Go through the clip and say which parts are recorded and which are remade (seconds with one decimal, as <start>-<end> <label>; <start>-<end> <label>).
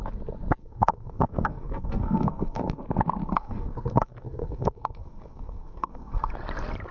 0.0-0.6 recorded; 0.6-2.8 remade; 2.8-3.2 recorded; 3.2-6.3 remade; 6.3-6.9 recorded